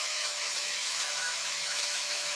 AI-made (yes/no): yes